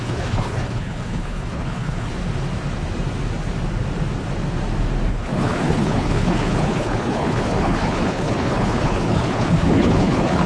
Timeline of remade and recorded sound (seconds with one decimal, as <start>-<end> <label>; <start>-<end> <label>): 0.0-2.1 remade; 2.1-5.1 recorded; 5.1-10.5 remade

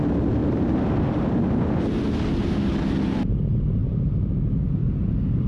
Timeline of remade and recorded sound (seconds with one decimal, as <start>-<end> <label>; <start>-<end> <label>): 0.0-0.4 recorded; 0.4-1.8 remade; 1.8-3.8 recorded; 3.8-4.3 remade; 4.3-4.8 recorded; 4.8-5.5 remade

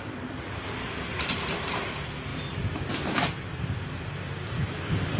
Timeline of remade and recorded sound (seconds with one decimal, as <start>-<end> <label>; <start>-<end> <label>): 0.0-5.2 remade